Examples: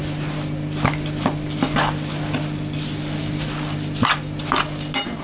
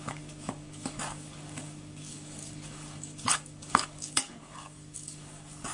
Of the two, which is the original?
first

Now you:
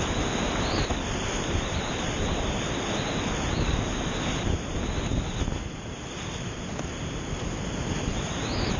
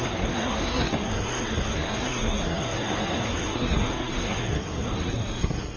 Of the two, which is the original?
first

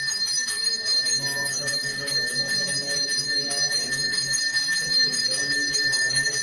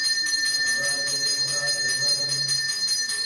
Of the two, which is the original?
second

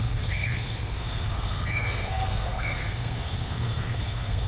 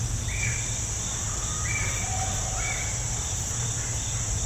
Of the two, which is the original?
second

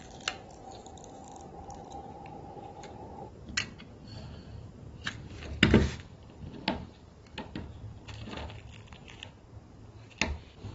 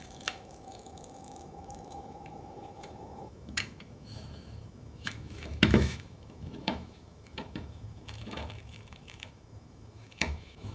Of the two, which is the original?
first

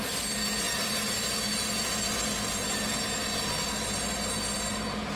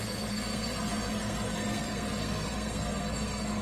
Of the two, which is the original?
first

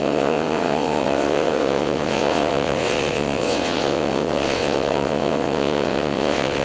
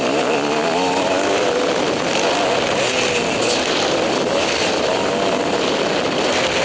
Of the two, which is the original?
second